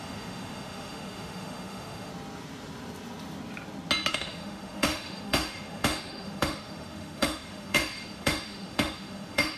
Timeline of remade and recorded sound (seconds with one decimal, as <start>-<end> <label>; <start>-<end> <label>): 0.0-2.1 remade; 2.1-4.1 recorded; 4.1-9.6 remade